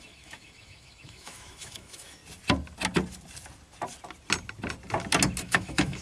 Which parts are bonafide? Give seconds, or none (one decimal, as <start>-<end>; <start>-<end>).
2.2-5.4

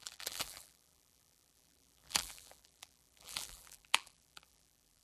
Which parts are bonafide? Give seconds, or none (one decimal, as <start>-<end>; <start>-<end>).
none